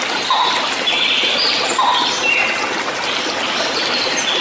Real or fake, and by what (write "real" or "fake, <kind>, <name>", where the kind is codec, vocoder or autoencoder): real